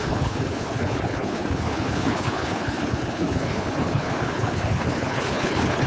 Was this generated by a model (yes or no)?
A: yes